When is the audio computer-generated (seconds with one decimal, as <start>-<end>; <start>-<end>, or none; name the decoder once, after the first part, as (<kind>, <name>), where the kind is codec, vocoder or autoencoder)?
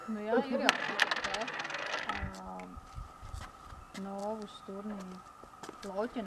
none